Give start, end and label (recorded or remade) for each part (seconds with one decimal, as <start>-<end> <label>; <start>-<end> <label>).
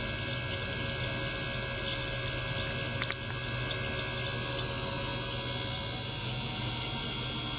0.0-7.6 recorded